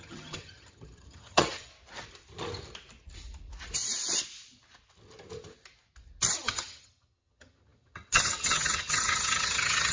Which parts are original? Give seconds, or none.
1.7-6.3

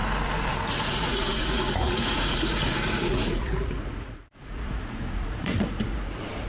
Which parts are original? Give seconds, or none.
0.0-0.5